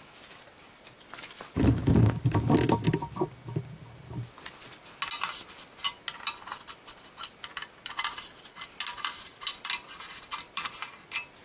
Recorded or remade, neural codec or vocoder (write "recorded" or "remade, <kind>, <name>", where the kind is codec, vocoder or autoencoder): recorded